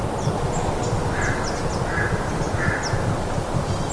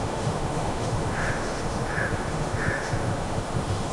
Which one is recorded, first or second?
first